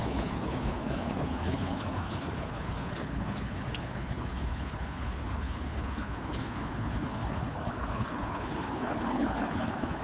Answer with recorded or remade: remade